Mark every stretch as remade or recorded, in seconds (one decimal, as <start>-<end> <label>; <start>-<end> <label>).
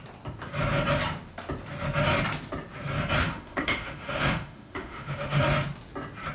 0.0-3.2 recorded; 3.2-5.4 remade; 5.4-6.3 recorded